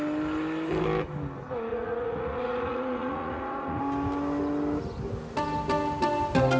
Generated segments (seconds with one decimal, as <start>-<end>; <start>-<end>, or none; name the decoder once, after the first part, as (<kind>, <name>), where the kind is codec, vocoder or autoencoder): 1.7-3.8 (vocoder, Vocos)